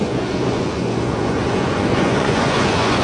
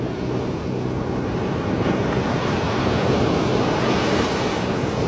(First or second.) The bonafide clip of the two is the second